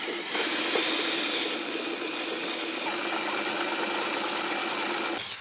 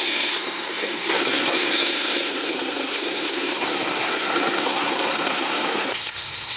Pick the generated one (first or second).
second